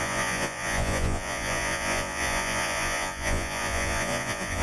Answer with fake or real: fake